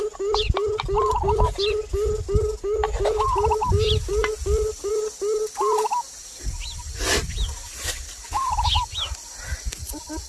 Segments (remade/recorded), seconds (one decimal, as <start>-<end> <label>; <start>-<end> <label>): 0.0-10.3 recorded